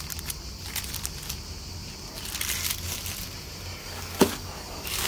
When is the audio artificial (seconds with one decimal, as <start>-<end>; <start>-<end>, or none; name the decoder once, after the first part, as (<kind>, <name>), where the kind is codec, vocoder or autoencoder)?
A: 3.8-5.1 (codec, DAC)